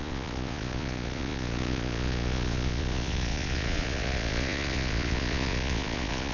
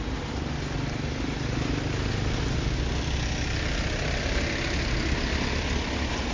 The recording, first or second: second